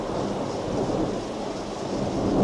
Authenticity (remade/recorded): recorded